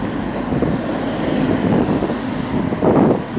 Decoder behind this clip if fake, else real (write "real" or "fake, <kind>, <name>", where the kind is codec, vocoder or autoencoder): real